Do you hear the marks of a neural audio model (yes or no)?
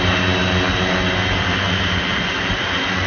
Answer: no